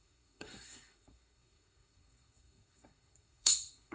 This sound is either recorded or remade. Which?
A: remade